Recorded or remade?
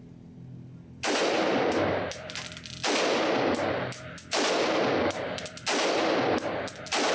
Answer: recorded